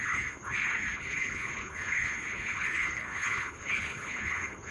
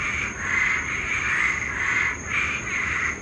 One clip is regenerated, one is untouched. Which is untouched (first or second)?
second